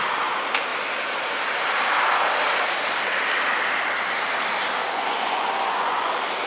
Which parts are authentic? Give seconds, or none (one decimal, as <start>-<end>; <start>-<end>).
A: 0.0-4.8; 6.1-6.5

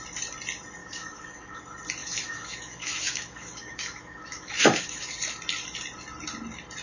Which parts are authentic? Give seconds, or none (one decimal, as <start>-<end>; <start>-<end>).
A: 0.0-0.8; 1.6-2.0; 5.1-6.8

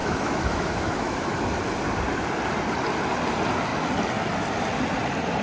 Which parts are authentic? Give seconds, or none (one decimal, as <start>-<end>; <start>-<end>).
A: 1.6-5.4

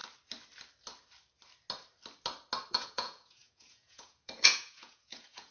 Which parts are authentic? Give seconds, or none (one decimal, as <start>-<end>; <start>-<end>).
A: 0.0-2.7

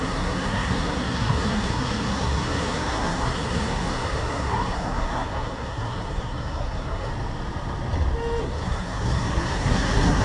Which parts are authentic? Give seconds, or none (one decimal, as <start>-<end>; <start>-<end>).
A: 7.1-8.4

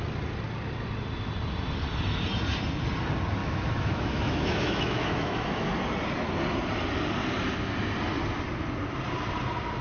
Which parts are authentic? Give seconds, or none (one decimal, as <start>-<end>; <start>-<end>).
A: 0.0-3.4; 5.7-9.8